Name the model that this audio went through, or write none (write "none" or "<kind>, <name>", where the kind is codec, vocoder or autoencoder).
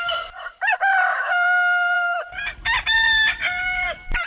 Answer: vocoder, BigVGAN v2